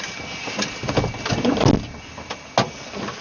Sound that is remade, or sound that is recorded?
recorded